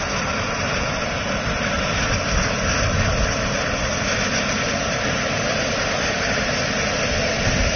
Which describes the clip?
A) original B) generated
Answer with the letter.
A